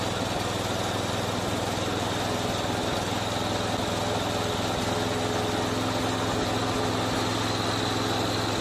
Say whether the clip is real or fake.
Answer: real